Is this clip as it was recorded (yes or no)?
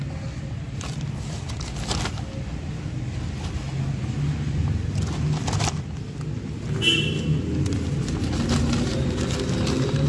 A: yes